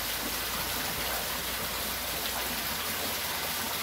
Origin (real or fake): real